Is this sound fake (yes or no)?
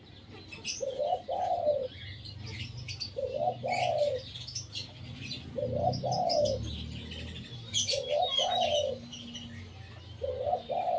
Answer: no